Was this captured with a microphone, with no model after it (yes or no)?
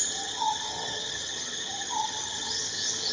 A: no